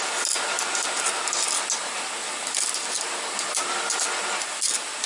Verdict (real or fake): real